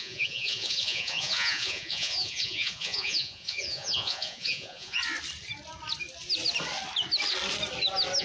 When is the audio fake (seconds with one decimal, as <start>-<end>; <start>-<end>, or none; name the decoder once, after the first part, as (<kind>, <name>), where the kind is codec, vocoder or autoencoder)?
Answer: 0.0-5.0 (vocoder, Vocos)